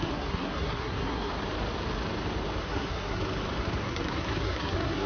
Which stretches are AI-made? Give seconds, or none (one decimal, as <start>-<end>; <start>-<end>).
0.0-1.3; 2.6-3.2; 3.8-5.1